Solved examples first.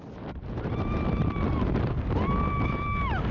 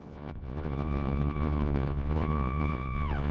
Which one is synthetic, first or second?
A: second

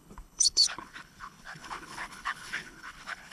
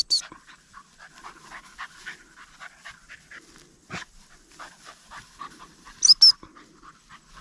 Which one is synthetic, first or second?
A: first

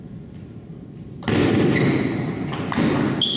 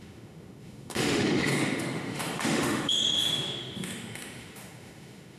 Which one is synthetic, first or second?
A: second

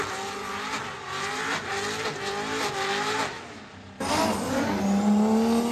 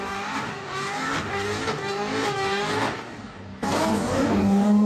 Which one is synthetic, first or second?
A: second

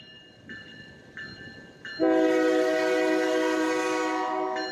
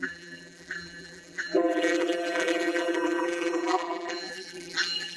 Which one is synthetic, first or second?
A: second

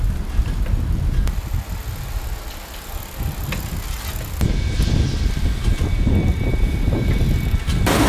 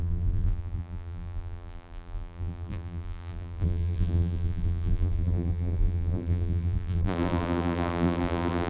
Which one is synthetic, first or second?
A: second